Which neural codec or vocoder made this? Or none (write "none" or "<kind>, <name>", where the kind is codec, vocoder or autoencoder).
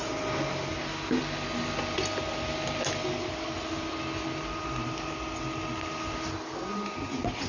none